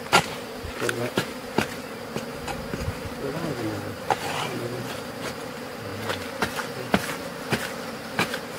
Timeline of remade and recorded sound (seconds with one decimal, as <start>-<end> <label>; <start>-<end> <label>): 0.0-5.9 remade; 5.9-7.9 recorded; 7.9-8.6 remade